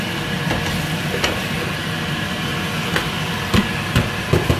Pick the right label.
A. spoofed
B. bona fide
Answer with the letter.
B